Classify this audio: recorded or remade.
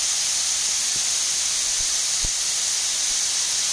recorded